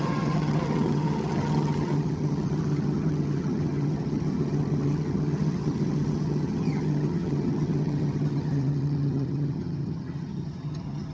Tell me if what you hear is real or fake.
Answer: fake